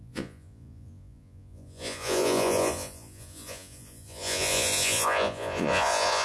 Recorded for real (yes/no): no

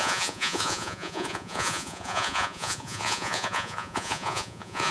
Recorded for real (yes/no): no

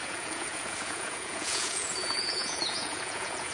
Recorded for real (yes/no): no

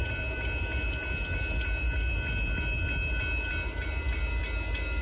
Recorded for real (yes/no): yes